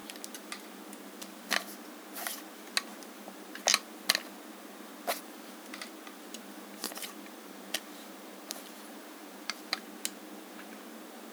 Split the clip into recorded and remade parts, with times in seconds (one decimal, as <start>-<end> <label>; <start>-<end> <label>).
0.0-2.9 recorded; 2.9-3.6 remade; 3.6-5.2 recorded; 5.2-5.9 remade; 5.9-6.8 recorded; 6.8-9.8 remade; 9.8-11.3 recorded